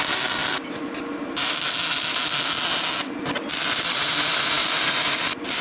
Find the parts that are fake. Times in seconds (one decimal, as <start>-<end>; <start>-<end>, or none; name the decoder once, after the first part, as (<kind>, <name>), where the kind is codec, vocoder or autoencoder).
none